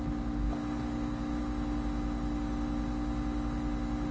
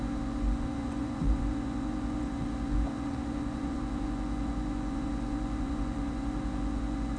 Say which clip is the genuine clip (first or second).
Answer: first